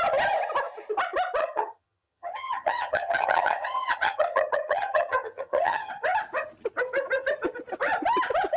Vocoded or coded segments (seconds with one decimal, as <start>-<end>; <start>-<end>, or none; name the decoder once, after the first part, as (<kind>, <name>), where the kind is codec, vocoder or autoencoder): 1.4-5.9 (vocoder, HiFi-GAN)